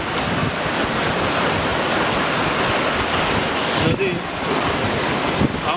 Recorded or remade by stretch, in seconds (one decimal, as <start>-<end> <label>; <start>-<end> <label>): 0.0-1.7 remade; 1.7-4.5 recorded; 4.5-5.8 remade